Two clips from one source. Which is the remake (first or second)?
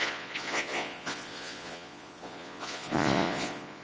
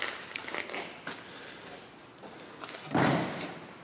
first